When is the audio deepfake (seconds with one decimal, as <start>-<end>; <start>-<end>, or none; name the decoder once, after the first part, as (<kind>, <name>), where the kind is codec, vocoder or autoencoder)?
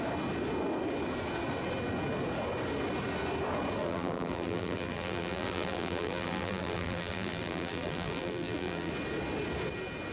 3.8-8.9 (vocoder, BigVGAN v2)